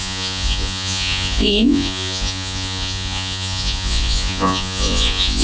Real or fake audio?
fake